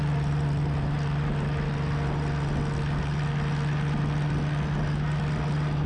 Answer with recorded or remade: recorded